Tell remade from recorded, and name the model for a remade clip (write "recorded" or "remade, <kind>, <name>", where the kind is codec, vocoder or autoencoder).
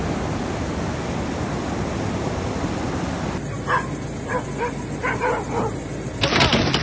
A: recorded